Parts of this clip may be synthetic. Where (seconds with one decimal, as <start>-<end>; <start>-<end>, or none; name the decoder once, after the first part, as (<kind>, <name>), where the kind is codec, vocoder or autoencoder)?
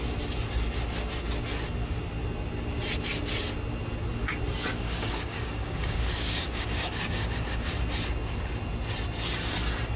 4.7-7.7 (codec, DAC)